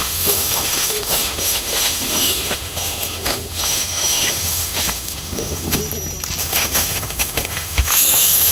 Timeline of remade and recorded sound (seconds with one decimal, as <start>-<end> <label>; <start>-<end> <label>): 0.0-5.8 remade; 5.8-6.4 recorded; 6.4-8.5 remade